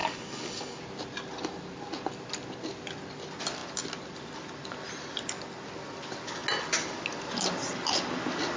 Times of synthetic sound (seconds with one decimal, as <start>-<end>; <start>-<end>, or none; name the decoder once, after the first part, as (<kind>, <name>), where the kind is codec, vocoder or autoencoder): 0.0-0.8 (codec, DAC)